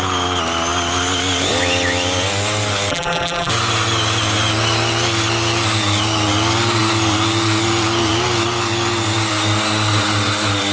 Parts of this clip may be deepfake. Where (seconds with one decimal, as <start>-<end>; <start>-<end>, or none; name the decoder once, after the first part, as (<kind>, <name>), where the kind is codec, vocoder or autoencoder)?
2.9-3.5 (vocoder, BigVGAN v2)